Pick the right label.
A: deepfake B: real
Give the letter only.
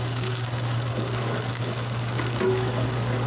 A